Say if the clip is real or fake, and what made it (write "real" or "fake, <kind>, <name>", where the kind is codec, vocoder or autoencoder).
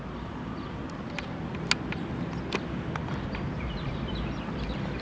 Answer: real